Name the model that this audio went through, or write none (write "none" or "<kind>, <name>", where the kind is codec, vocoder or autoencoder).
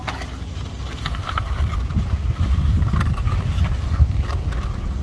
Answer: none